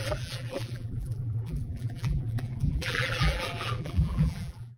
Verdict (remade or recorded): remade